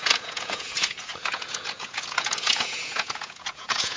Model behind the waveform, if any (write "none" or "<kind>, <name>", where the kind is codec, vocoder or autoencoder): vocoder, Vocos